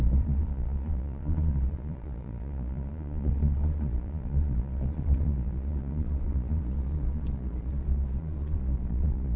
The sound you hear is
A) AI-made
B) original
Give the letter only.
A